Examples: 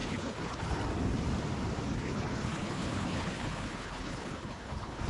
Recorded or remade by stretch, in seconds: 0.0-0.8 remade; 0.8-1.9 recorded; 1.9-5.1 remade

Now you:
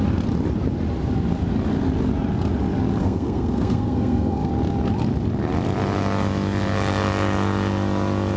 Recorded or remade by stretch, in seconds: 0.0-3.0 recorded; 3.0-4.5 remade; 4.5-8.4 recorded